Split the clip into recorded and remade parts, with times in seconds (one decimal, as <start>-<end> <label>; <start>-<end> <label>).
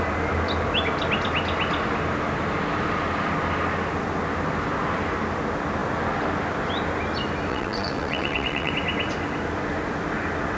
0.0-7.5 recorded; 7.5-8.7 remade; 8.7-10.6 recorded